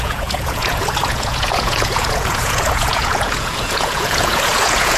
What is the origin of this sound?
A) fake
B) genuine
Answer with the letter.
A